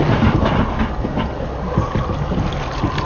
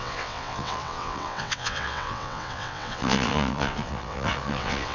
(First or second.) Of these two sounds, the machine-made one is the second